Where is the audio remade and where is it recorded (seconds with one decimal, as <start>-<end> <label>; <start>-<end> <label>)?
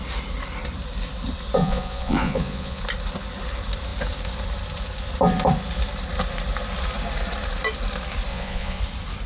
0.0-1.6 recorded; 1.6-2.8 remade; 2.8-8.3 recorded; 8.3-8.8 remade; 8.8-9.3 recorded